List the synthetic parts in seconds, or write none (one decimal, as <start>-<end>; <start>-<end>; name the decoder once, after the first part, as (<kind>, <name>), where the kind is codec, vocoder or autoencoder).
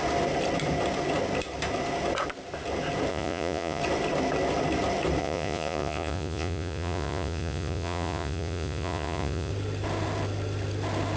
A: 3.1-3.8 (vocoder, Vocos); 5.2-9.5